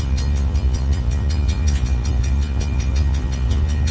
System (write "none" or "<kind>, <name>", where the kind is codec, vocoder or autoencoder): vocoder, Vocos